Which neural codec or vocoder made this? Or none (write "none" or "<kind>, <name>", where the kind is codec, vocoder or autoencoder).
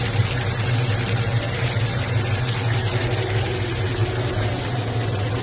none